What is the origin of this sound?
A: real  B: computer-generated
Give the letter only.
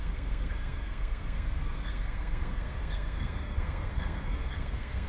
B